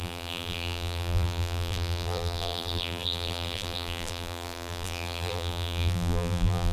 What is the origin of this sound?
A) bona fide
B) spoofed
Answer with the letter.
B